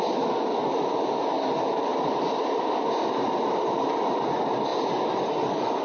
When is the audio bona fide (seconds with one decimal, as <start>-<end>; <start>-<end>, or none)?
0.0-5.8